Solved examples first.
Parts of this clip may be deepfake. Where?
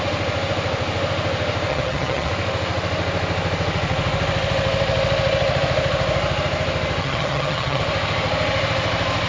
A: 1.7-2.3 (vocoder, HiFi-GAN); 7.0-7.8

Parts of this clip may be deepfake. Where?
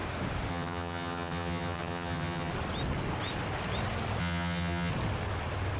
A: 0.5-2.5 (vocoder, HiFi-GAN); 4.2-4.9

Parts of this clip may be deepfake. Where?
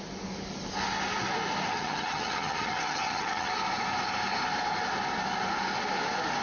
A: 1.7-3.5 (vocoder, HiFi-GAN)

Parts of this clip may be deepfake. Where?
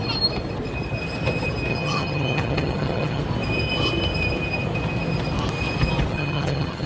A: 1.7-3.2 (vocoder, HiFi-GAN); 6.1-6.9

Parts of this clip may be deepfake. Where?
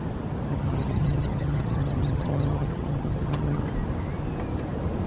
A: 0.5-3.6 (vocoder, HiFi-GAN)